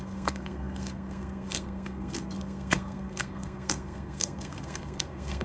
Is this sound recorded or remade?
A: remade